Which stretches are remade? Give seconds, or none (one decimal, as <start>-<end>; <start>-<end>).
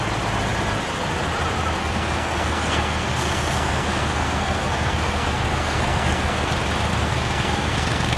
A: 1.8-6.5; 6.9-8.2